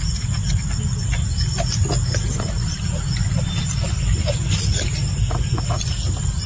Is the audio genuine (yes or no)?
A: yes